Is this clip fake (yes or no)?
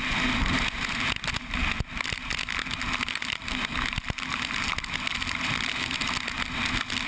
no